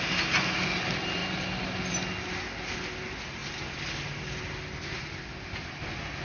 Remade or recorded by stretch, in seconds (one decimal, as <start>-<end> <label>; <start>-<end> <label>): 0.0-6.2 recorded